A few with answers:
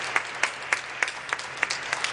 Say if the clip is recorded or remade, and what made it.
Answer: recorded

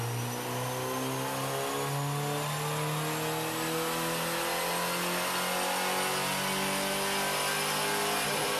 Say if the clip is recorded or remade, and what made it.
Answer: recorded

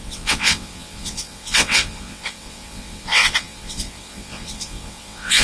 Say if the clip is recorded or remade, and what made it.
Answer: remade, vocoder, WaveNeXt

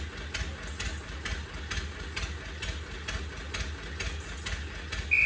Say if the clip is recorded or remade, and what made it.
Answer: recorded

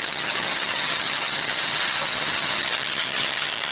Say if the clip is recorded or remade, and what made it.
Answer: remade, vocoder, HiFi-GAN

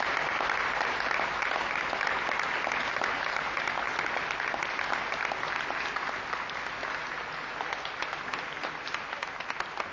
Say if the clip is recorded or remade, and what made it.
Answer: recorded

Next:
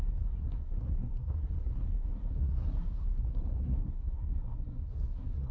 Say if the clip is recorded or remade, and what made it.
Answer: remade, codec, SNAC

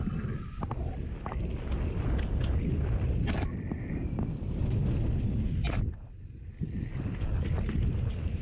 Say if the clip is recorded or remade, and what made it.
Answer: recorded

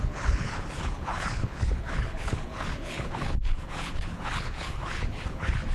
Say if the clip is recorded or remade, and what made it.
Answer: remade, codec, HILCodec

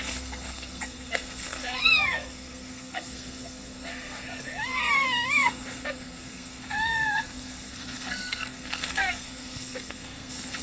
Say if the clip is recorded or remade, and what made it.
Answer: remade, codec, SNAC